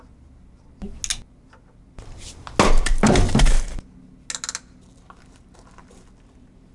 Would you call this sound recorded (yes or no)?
yes